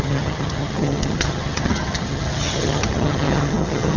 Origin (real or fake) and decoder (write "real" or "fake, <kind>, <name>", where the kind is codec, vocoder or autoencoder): fake, vocoder, HiFi-GAN